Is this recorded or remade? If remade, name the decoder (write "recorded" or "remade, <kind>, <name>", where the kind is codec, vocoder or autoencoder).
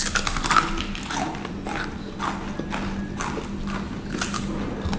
recorded